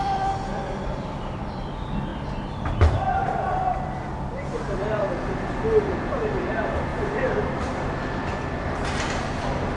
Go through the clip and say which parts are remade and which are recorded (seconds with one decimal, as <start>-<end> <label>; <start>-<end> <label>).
0.0-6.9 remade; 6.9-7.5 recorded; 7.5-9.8 remade